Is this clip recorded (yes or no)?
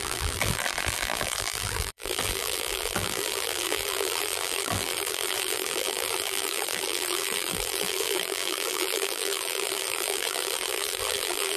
no